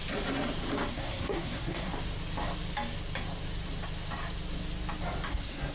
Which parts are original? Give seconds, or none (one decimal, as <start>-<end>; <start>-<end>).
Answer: 0.0-0.9; 1.9-5.3